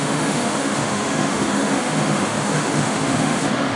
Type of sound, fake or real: fake